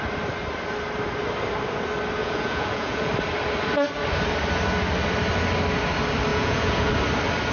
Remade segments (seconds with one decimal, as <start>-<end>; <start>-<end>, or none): 2.2-3.1; 6.3-6.9